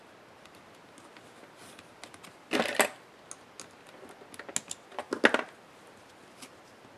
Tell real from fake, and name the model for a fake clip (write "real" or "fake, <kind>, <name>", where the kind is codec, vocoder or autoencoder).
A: real